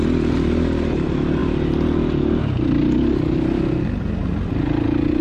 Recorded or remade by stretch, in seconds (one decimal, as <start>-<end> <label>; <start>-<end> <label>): 0.0-5.2 recorded